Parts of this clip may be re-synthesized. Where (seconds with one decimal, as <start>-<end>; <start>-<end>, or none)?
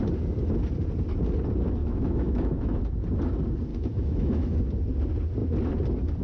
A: 1.8-2.8; 3.7-4.6